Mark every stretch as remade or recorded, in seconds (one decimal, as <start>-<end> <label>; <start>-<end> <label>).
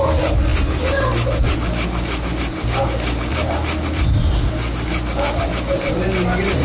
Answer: 0.0-6.6 recorded